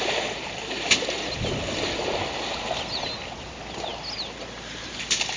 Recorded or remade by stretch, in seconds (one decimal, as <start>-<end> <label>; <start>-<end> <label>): 0.0-5.4 recorded